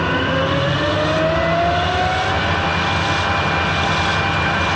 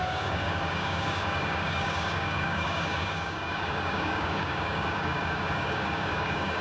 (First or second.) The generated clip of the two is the second